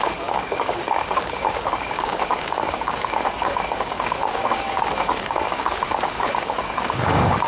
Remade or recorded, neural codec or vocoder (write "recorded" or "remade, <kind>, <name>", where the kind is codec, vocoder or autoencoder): remade, codec, DAC